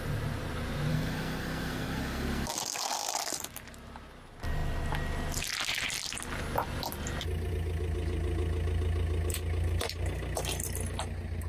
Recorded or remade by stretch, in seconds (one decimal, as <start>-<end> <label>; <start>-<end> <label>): 0.0-0.9 recorded; 0.9-3.1 remade; 3.1-11.5 recorded

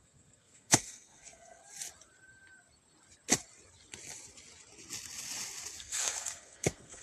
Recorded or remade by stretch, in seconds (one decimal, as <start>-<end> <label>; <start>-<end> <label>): 0.0-1.6 remade; 1.6-5.8 recorded; 5.8-7.0 remade

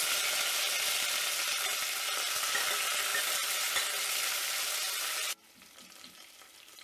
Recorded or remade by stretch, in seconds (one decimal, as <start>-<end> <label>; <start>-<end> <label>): 0.0-6.8 recorded

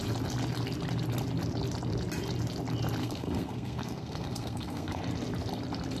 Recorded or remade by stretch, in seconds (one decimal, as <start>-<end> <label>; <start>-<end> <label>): 0.0-3.0 recorded; 3.0-5.0 remade; 5.0-6.0 recorded